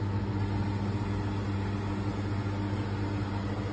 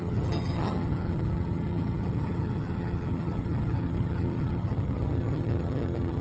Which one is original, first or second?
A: first